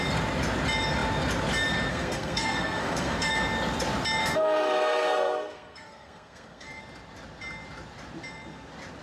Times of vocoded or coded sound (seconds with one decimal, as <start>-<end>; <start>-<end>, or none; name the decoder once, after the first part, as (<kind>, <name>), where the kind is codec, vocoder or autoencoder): 1.9-3.3 (codec, SNAC); 4.2-6.8